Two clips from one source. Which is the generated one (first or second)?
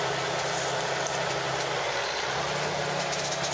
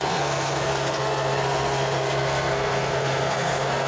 second